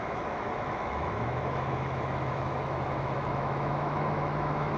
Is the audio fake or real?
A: fake